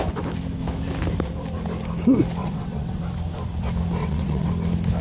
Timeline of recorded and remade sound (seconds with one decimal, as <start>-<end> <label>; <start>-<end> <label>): 0.0-2.4 recorded; 2.4-3.0 remade; 3.0-4.0 recorded; 4.0-4.5 remade; 4.5-5.0 recorded